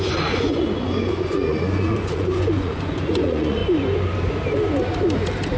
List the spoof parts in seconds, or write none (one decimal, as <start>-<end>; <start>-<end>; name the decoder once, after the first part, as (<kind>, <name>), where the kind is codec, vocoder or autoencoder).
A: 0.0-3.6 (vocoder, Vocos)